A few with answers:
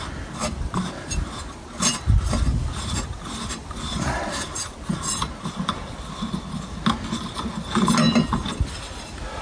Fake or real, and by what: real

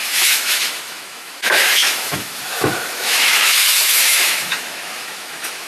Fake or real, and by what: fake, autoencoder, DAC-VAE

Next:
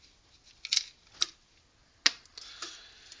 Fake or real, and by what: real